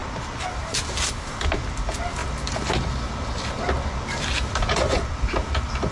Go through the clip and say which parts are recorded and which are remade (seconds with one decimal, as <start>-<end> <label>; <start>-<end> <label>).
0.0-2.2 remade; 2.2-2.7 recorded; 2.7-5.9 remade